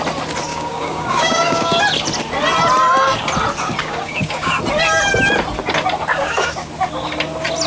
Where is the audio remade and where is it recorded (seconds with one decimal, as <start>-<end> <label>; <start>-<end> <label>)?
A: 0.0-0.5 recorded; 0.5-1.8 remade; 1.8-3.8 recorded; 3.8-4.5 remade; 4.5-6.1 recorded; 6.1-6.7 remade; 6.7-7.7 recorded